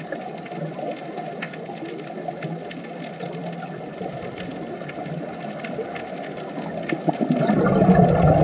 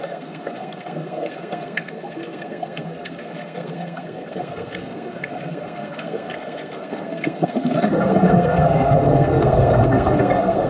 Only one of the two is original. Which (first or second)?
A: first